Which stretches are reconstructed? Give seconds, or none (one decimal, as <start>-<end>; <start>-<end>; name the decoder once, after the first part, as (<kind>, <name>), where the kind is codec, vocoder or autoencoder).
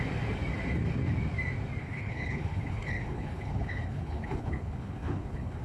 1.8-5.6 (codec, HILCodec)